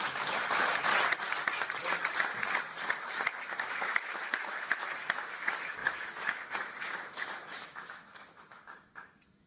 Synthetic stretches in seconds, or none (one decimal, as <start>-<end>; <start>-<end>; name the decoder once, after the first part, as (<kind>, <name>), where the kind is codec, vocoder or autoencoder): 0.0-0.9 (autoencoder, DAC-VAE); 3.6-9.5